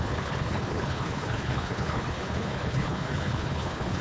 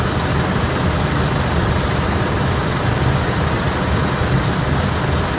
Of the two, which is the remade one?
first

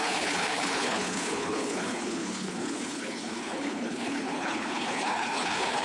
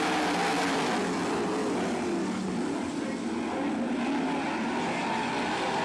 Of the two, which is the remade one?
first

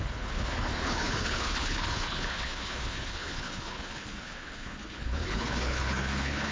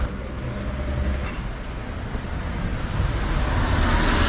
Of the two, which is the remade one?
first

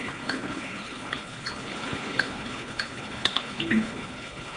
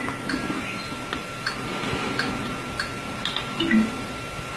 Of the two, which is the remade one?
first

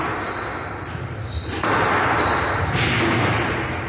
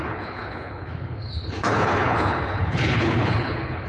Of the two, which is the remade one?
second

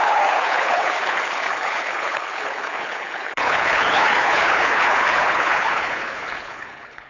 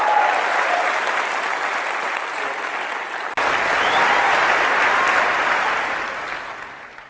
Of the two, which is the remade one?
first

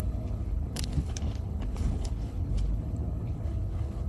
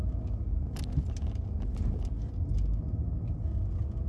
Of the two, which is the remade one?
first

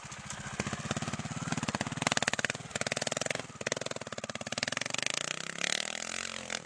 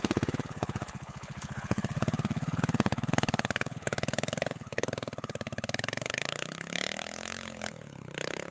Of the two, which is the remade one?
second